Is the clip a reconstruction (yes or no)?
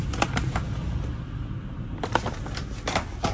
no